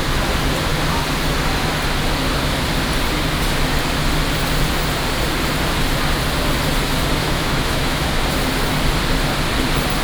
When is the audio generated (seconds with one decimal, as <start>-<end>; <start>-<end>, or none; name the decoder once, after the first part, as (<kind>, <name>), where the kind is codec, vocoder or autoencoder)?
7.2-8.1 (autoencoder, DAC-VAE)